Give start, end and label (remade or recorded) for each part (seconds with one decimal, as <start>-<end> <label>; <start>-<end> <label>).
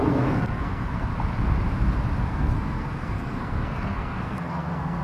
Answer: 0.0-1.1 remade; 1.1-2.2 recorded; 2.2-5.0 remade